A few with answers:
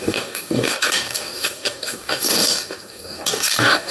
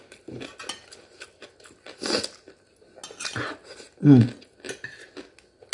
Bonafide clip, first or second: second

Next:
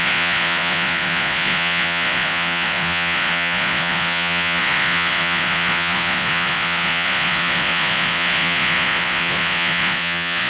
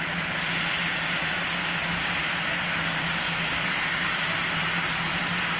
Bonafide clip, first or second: second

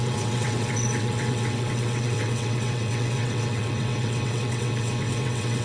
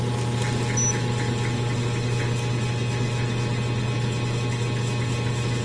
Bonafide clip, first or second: second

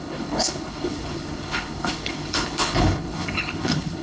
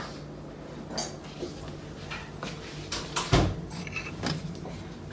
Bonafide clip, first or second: second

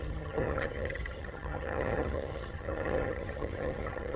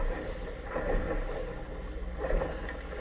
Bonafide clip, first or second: second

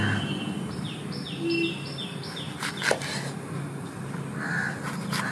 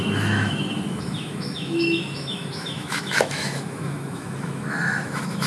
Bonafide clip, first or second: first